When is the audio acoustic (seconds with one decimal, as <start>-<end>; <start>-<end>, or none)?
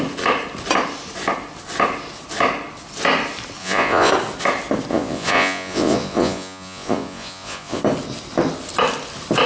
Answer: 0.0-3.6; 4.1-4.9; 7.8-9.5